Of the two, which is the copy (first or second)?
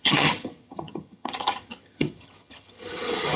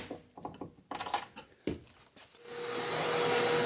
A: first